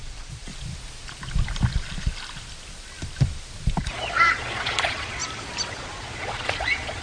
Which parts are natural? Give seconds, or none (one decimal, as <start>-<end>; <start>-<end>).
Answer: 0.5-3.8; 5.2-5.7